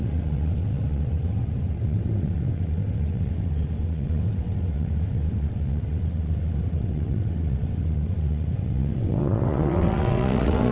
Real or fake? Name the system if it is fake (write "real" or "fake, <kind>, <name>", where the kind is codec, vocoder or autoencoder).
fake, vocoder, WaveNeXt